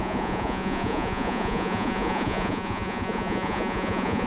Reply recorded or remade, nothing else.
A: remade